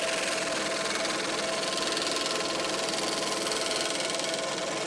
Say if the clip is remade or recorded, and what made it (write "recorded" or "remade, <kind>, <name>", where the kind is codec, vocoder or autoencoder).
recorded